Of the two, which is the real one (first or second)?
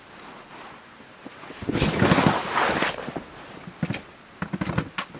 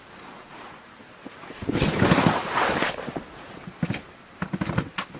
first